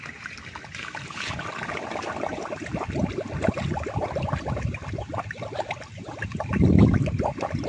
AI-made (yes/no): no